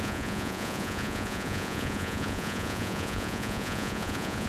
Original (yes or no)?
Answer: no